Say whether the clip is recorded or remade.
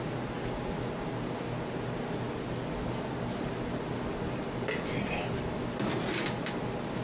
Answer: recorded